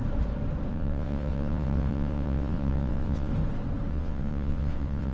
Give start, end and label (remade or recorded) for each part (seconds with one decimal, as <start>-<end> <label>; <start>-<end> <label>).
0.0-0.7 recorded; 0.7-3.3 remade; 3.3-3.9 recorded; 3.9-5.1 remade